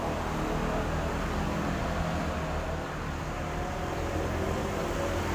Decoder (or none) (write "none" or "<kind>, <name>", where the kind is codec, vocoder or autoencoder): none